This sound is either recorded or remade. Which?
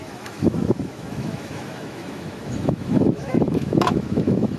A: remade